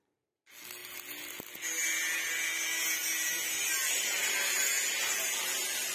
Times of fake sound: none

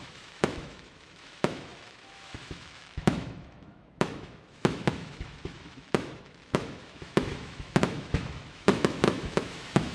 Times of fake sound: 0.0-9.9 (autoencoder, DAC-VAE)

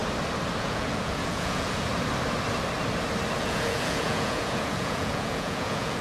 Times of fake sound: 0.6-1.9 (vocoder, Vocos); 3.4-6.0

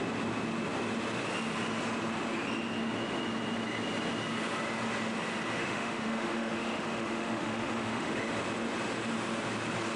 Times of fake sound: 5.6-8.2 (autoencoder, DAC-VAE)

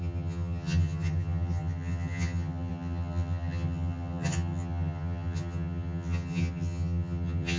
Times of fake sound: 0.0-7.6 (vocoder, HiFi-GAN)